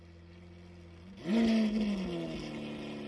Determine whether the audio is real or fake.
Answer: real